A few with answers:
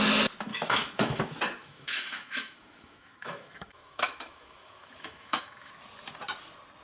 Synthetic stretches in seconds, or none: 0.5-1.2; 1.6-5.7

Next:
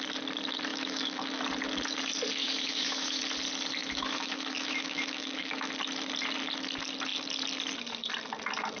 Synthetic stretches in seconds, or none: 0.7-1.4; 2.4-3.2; 3.8-5.7

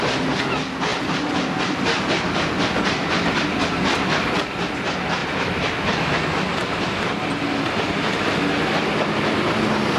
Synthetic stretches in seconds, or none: none

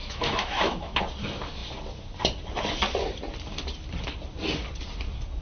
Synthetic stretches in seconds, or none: 0.0-1.0

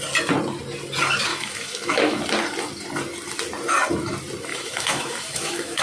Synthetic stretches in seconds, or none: 1.3-2.2; 4.5-5.8

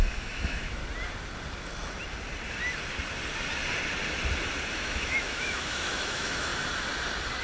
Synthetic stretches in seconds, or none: 0.0-0.8; 4.7-6.5

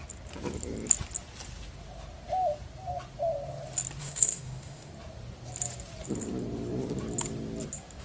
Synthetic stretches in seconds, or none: 4.0-4.9